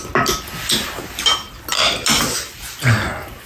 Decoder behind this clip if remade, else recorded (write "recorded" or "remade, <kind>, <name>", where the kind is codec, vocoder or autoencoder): recorded